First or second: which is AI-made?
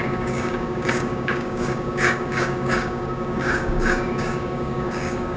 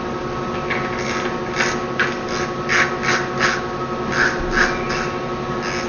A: first